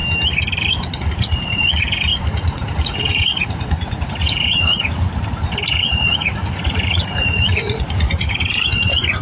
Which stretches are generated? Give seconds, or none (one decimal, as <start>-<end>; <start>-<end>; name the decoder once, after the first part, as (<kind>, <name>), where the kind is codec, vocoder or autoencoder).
1.0-5.1 (vocoder, Vocos); 5.7-9.2